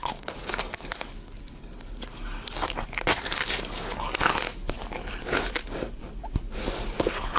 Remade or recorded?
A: remade